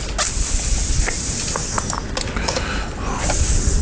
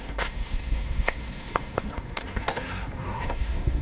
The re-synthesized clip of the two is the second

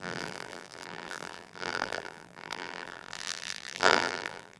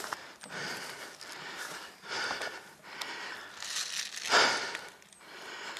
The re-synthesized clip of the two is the first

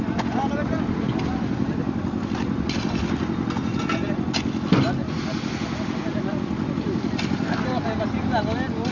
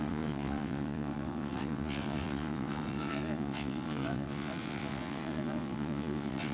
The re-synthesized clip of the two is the second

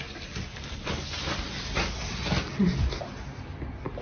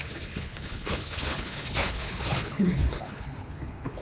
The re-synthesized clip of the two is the second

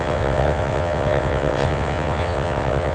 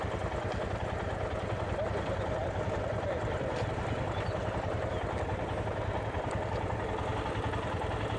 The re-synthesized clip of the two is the first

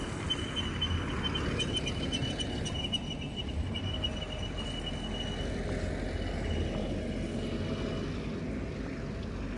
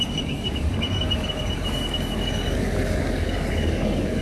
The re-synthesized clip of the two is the second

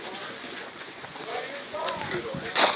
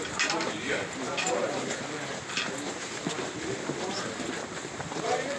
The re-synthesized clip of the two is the first